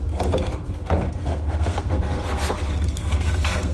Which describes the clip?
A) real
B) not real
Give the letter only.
B